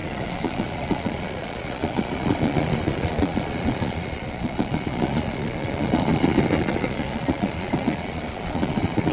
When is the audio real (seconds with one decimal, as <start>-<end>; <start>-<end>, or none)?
none